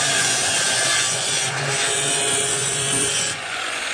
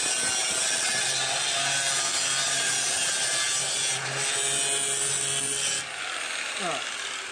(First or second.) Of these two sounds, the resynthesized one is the first